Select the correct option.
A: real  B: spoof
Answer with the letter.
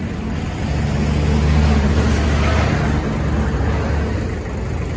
A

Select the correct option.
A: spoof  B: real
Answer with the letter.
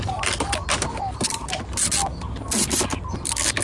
B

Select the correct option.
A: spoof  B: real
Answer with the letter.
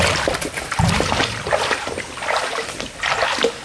B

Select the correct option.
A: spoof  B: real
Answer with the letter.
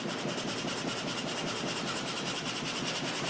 B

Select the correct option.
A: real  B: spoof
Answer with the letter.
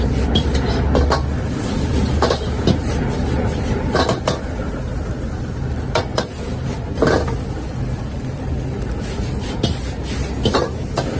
A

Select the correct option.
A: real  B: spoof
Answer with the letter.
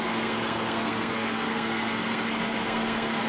B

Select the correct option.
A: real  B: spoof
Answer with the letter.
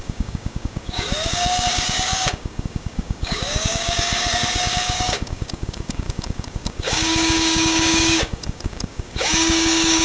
B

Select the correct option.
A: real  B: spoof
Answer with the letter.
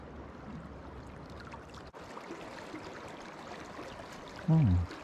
A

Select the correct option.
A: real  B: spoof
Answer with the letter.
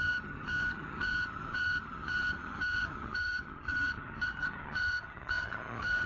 B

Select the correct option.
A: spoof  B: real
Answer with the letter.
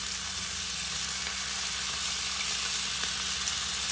B